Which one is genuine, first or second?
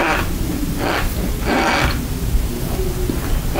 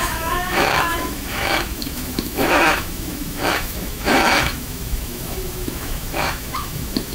first